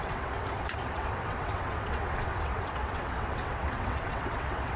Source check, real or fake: fake